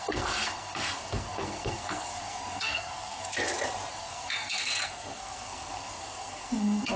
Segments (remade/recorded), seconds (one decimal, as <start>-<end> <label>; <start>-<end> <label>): 0.0-3.3 remade; 3.3-3.9 recorded; 3.9-7.0 remade

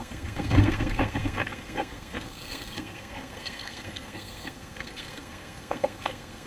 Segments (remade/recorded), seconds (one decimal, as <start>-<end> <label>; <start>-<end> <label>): 0.0-6.5 remade

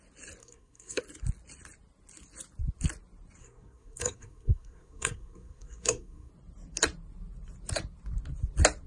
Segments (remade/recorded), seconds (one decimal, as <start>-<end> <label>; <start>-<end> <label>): 0.0-0.4 recorded; 0.4-1.0 remade; 1.0-3.4 recorded; 3.4-6.3 remade; 6.3-8.9 recorded

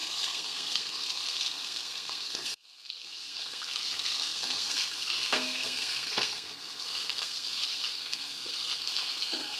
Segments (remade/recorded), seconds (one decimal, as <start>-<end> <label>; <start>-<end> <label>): 0.0-9.6 remade

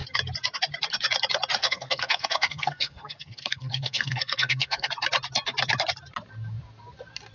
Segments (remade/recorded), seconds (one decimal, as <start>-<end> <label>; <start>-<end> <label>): 0.0-1.6 recorded; 1.6-4.9 remade; 4.9-7.3 recorded